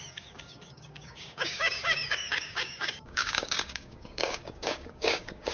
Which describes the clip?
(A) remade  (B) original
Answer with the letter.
A